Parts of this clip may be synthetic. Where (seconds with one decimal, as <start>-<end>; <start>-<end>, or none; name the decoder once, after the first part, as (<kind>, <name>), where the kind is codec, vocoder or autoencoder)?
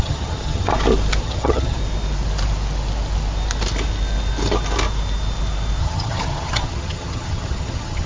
0.0-0.7 (vocoder, HiFi-GAN); 1.2-1.8; 5.8-8.1